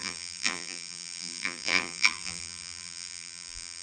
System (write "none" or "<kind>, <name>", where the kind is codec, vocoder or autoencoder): vocoder, BigVGAN v2